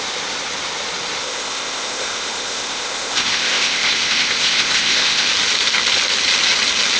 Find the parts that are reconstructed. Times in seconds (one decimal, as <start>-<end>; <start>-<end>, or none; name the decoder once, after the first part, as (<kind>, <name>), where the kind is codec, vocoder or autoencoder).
1.2-5.3 (codec, ZipCodec)